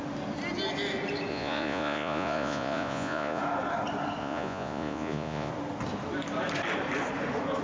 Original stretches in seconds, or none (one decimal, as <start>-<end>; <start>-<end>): 0.0-1.3; 3.4-4.2; 5.5-7.6